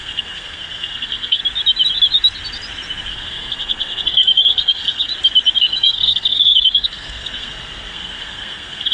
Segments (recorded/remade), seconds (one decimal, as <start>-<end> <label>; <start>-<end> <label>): 0.0-1.4 remade; 1.4-3.1 recorded; 3.1-5.1 remade; 5.1-5.6 recorded; 5.6-8.9 remade